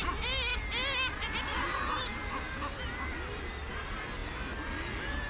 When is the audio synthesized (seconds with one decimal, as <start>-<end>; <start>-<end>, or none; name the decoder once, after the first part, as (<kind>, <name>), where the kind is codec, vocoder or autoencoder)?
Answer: none